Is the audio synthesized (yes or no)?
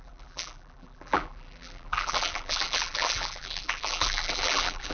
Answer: yes